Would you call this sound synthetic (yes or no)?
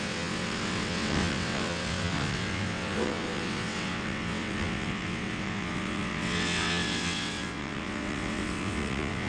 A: yes